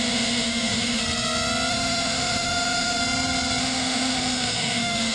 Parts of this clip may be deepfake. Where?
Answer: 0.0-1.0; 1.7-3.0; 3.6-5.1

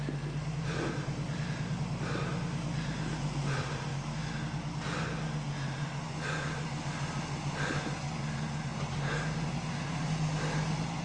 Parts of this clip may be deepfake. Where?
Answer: 3.9-4.4

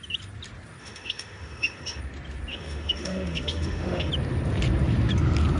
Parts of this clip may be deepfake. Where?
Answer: 0.8-2.0; 2.5-4.1